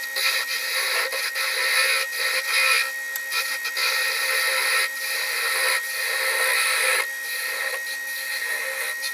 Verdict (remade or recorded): recorded